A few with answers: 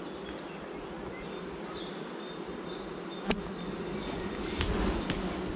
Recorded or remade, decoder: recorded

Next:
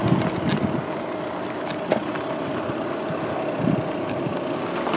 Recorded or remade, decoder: recorded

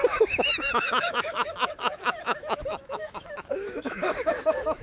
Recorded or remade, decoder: remade, autoencoder, DAC-VAE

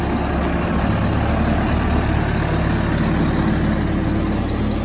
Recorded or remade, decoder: recorded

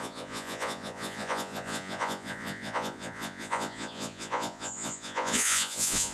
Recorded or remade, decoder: remade, vocoder, Vocos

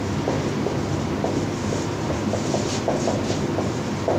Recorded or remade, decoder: recorded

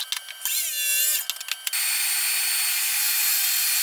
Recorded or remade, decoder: recorded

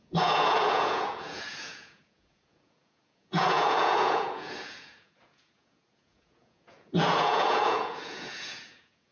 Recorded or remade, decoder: remade, vocoder, Vocos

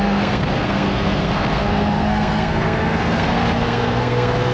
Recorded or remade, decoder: remade, codec, SNAC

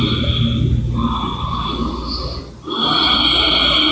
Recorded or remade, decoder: recorded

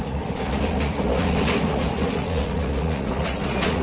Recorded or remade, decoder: remade, vocoder, Vocos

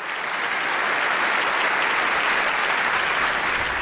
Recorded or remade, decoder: recorded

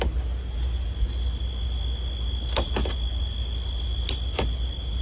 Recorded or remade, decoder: recorded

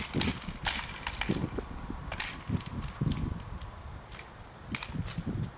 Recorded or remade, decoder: recorded